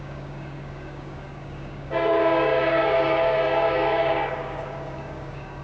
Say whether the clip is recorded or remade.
remade